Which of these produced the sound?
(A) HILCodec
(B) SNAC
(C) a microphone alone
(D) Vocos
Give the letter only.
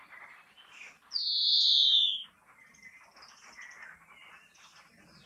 C